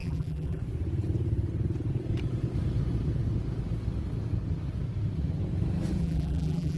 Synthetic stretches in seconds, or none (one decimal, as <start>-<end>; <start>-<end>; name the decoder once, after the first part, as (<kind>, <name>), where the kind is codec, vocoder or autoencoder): 0.0-0.6 (vocoder, BigVGAN v2); 6.0-6.8